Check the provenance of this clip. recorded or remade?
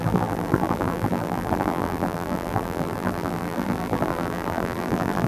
remade